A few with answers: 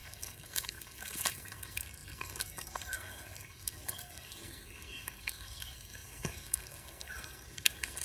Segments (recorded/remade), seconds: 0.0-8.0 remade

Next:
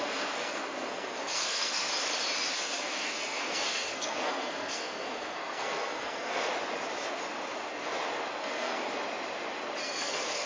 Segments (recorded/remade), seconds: 0.0-1.9 remade; 1.9-2.5 recorded; 2.5-6.5 remade; 6.5-8.4 recorded; 8.4-8.9 remade; 8.9-9.8 recorded; 9.8-10.5 remade

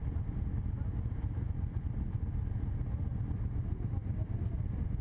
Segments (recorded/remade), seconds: 0.0-5.0 recorded

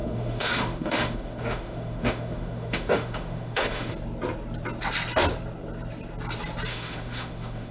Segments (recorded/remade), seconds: 0.0-3.9 remade; 3.9-6.7 recorded; 6.7-7.7 remade